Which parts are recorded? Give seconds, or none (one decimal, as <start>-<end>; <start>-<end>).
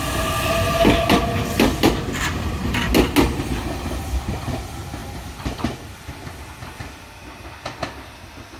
0.0-5.0; 6.3-8.6